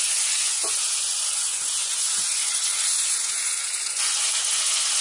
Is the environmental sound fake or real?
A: fake